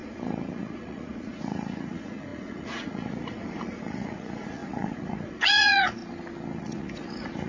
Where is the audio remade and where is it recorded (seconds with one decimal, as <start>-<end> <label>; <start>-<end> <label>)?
0.0-6.0 remade; 6.0-6.6 recorded; 6.6-7.5 remade